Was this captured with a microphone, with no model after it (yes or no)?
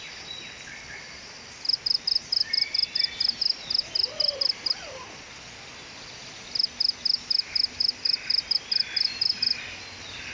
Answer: yes